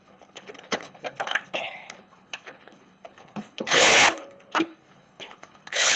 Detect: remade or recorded remade